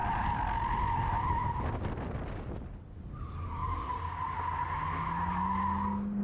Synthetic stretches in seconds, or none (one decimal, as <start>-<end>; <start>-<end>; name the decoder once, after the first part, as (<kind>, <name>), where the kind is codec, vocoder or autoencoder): none